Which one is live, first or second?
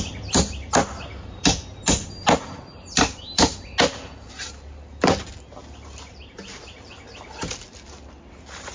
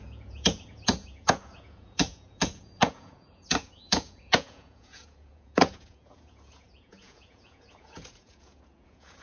first